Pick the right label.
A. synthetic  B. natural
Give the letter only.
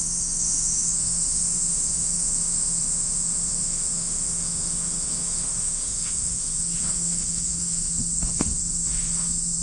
A